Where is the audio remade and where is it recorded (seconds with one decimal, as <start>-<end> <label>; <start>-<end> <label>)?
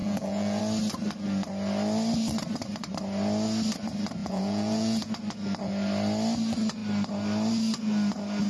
0.0-0.6 remade; 0.6-4.2 recorded; 4.2-5.1 remade; 5.1-8.5 recorded